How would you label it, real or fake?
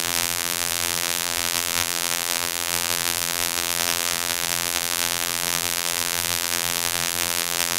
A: fake